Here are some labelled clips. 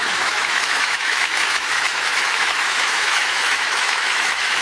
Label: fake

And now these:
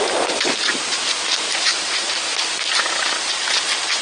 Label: real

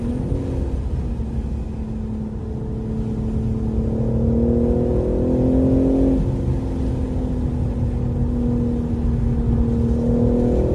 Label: real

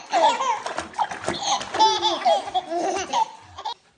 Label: real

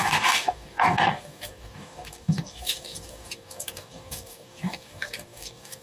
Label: fake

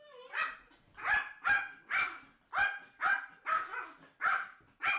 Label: real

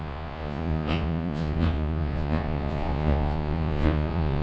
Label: fake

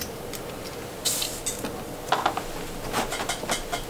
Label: real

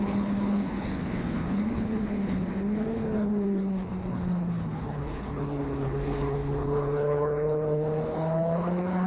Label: fake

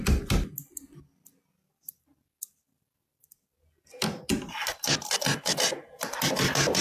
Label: real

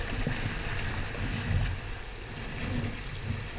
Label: real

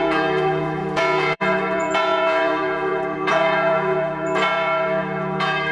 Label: fake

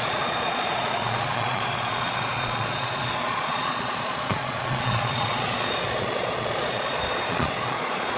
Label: fake